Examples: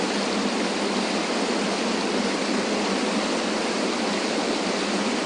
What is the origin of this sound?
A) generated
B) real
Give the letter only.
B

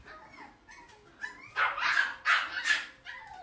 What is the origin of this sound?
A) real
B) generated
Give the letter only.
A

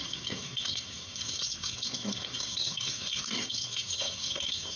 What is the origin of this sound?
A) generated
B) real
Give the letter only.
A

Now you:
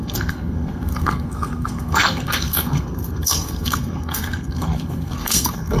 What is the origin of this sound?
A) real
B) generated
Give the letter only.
B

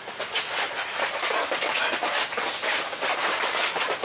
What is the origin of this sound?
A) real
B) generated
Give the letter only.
A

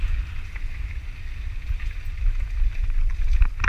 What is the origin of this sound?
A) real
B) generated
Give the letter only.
A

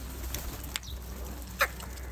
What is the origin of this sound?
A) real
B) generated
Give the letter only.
A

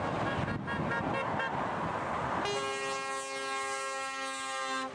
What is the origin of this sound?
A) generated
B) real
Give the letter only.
B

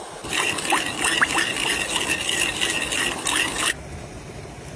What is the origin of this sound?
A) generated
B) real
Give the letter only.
B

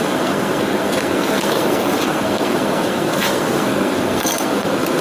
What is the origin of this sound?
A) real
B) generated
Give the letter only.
B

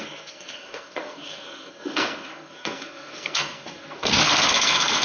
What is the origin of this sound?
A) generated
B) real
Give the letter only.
A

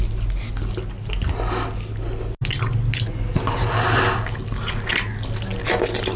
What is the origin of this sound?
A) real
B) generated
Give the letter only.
A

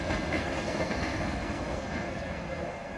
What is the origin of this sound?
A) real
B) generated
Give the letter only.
B